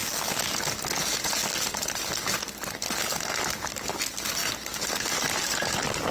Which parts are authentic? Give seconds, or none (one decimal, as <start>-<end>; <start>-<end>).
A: 0.0-6.1